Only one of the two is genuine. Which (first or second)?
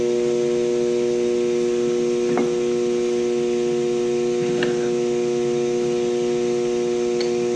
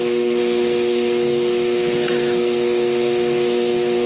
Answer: first